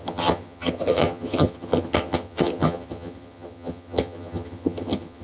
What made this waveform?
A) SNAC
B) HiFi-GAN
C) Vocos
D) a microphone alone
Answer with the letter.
B